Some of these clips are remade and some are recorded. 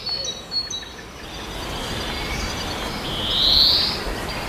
recorded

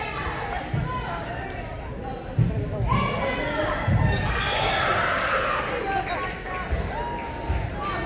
recorded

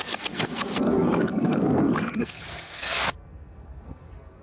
remade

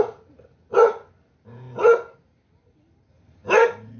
recorded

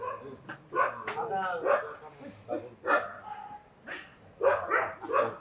recorded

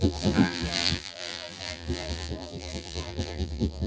remade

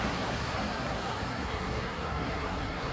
remade